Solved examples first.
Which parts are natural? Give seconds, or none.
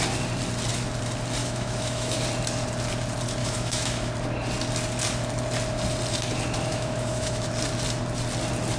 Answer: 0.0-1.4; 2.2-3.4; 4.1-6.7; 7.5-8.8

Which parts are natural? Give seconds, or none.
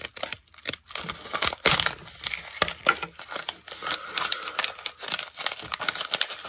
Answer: 0.0-6.5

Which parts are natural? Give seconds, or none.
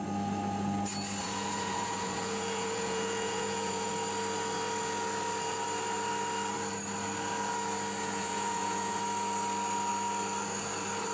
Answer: 0.0-1.2; 3.9-8.0; 9.0-11.1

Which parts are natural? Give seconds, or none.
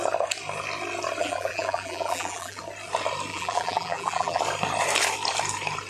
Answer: 0.0-1.2; 2.6-3.3; 4.4-5.9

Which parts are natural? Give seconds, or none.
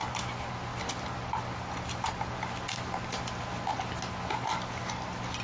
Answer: 0.0-5.4